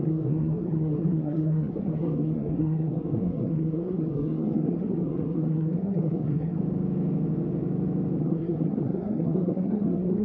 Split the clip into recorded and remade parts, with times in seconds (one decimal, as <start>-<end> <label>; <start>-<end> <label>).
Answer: 0.0-6.6 remade; 6.6-8.2 recorded; 8.2-10.2 remade